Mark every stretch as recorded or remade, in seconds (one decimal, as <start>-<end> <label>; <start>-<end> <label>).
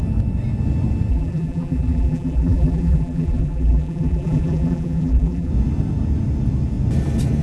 0.0-1.1 recorded; 1.1-5.5 remade; 5.5-7.4 recorded